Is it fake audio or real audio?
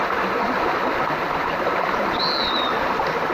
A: real